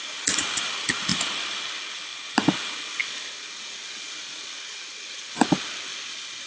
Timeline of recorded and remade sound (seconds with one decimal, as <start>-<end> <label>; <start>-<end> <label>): 0.0-6.5 recorded